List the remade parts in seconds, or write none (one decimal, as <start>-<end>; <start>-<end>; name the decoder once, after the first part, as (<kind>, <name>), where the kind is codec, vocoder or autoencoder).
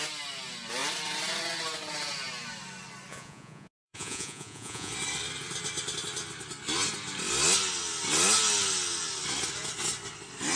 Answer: 3.1-4.9 (vocoder, Vocos)